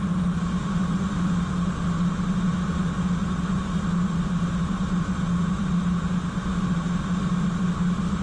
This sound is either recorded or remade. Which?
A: recorded